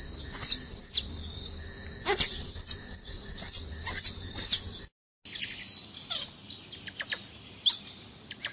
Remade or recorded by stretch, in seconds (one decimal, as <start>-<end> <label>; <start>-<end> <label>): 0.0-2.3 recorded; 2.3-4.3 remade; 4.3-8.5 recorded

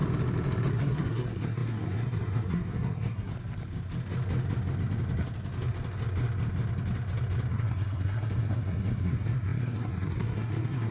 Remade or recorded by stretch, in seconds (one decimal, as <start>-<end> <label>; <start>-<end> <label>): 0.0-0.7 recorded; 0.7-3.3 remade; 3.3-7.5 recorded; 7.5-10.9 remade

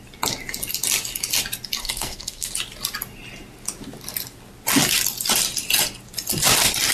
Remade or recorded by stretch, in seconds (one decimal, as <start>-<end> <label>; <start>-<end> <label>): 0.0-1.8 recorded; 1.8-2.5 remade; 2.5-6.9 recorded